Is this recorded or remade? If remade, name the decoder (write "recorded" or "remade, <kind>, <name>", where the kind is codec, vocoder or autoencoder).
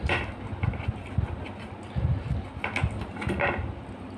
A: recorded